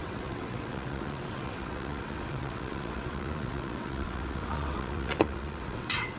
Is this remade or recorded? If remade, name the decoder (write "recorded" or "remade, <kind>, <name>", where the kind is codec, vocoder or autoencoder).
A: remade, vocoder, WaveNeXt